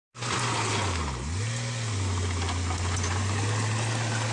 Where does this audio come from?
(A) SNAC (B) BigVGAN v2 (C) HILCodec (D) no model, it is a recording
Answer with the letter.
D